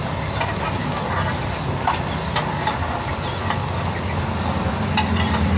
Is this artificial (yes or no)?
no